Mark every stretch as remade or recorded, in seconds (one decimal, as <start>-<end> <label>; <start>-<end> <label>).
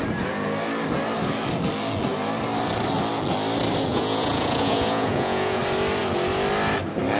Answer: 0.0-3.9 recorded; 3.9-5.6 remade; 5.6-7.2 recorded